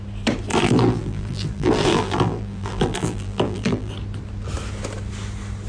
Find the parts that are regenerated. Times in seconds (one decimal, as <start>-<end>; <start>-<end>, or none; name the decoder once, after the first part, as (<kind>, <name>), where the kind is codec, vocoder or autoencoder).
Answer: 0.5-3.9 (vocoder, BigVGAN v2)